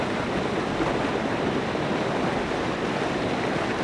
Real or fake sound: real